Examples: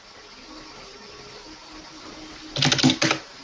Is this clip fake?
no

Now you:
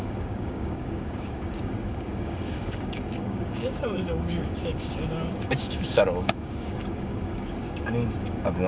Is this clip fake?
yes